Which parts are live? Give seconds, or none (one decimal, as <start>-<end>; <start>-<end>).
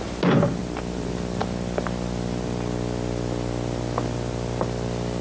0.0-5.2